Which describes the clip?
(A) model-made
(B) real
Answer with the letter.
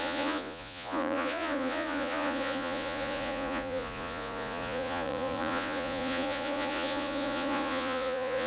A